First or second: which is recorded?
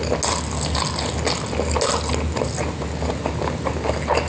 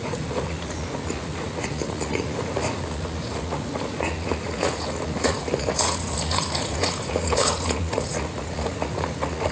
first